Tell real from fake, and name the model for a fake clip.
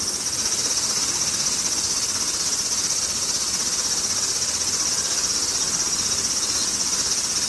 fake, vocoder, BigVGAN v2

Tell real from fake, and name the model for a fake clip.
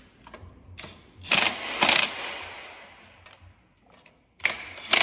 real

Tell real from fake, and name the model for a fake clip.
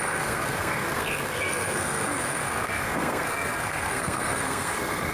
fake, codec, SNAC